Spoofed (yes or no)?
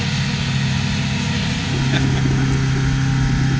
no